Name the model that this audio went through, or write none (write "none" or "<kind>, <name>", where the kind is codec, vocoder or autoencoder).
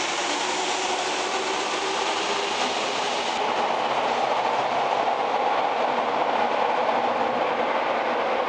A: none